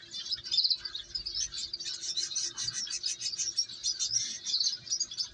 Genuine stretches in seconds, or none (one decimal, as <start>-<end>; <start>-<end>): 1.0-5.3